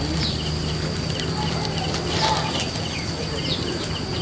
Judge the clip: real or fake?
real